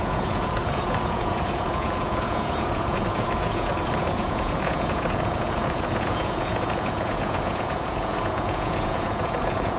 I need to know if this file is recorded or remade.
remade